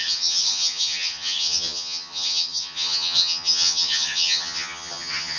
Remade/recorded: remade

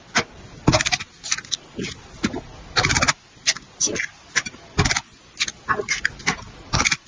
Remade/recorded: recorded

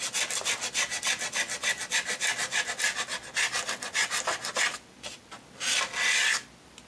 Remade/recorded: recorded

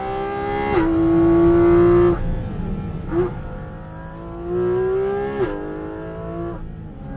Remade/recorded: recorded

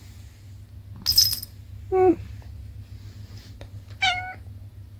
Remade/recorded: recorded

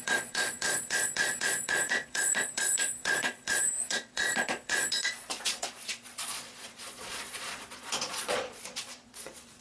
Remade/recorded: remade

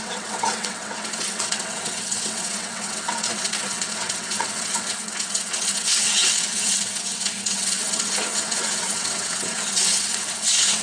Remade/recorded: remade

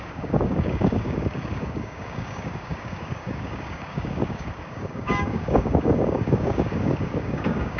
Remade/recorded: remade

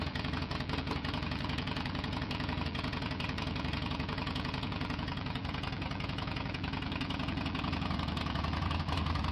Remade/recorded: remade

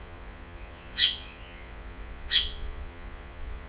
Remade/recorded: remade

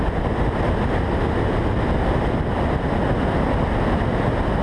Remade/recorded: recorded